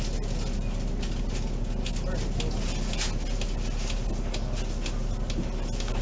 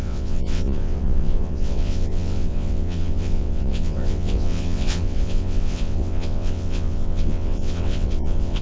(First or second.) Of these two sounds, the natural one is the first